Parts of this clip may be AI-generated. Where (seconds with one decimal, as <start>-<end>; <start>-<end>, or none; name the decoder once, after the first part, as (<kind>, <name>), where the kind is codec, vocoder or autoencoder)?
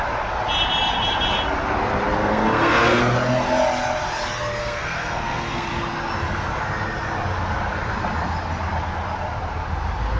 2.2-3.0 (codec, SNAC); 4.6-5.7